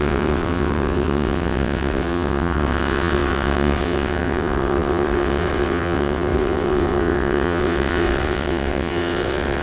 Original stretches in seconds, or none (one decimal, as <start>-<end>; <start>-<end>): none